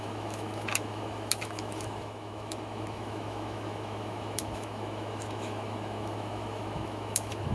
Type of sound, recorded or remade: remade